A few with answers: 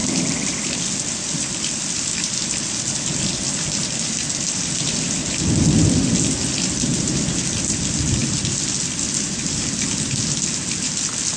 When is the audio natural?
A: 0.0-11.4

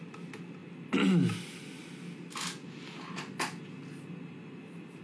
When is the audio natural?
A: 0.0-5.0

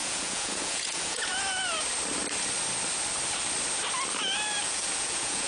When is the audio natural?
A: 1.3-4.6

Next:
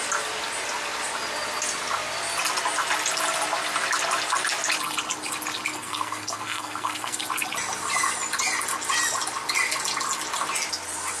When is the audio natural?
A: 0.0-5.7; 7.2-11.2